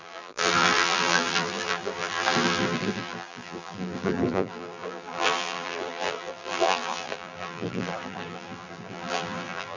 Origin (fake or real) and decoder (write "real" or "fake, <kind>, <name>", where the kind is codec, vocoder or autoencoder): fake, vocoder, BigVGAN v2